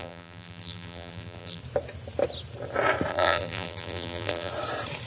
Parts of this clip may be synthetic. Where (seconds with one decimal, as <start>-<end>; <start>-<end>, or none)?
0.0-1.6; 3.1-4.5